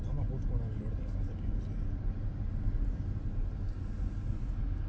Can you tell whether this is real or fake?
real